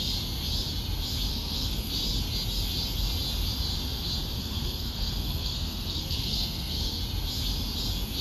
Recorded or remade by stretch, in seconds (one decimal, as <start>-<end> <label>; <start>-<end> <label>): 0.0-1.3 recorded; 1.3-1.9 remade; 1.9-4.4 recorded; 4.4-7.0 remade; 7.0-8.2 recorded